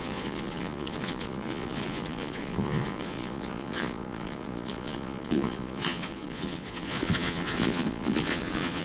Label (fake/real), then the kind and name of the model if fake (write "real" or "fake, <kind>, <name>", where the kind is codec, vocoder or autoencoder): fake, vocoder, Vocos